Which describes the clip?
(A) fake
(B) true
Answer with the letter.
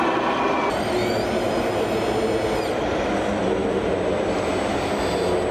B